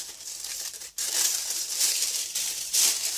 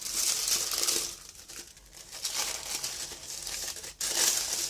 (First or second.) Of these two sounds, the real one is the second